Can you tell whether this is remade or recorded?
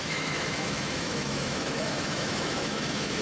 remade